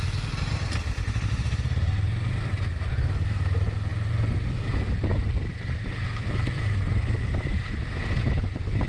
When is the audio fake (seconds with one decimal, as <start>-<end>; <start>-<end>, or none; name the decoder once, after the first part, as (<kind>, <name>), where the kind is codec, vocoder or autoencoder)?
none